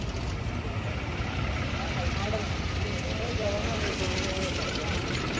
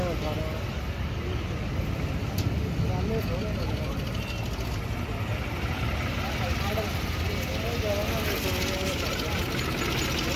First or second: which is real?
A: second